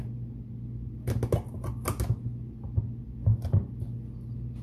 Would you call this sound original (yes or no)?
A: yes